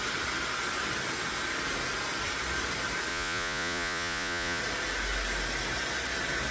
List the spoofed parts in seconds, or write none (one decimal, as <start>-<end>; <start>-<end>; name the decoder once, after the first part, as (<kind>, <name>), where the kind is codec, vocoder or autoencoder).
3.1-4.6 (vocoder, Vocos)